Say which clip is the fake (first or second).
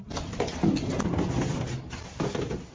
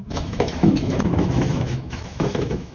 second